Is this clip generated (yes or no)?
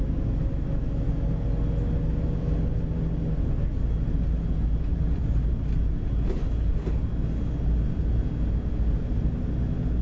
no